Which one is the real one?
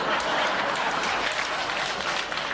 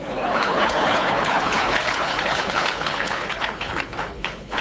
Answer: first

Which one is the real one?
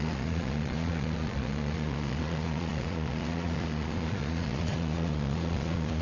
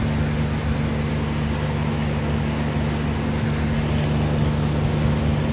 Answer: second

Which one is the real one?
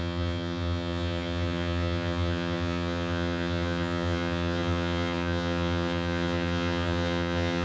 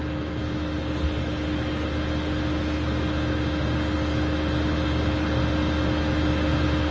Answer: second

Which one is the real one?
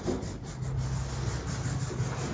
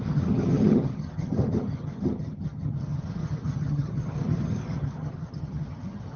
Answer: first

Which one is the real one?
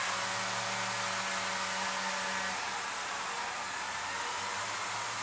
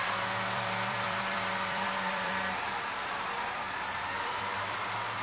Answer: first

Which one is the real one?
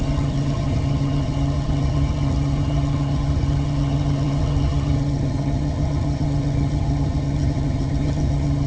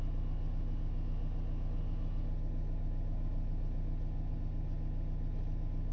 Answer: second